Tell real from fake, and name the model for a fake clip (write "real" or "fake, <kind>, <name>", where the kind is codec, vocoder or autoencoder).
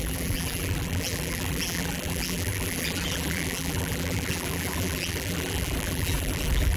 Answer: fake, vocoder, BigVGAN v2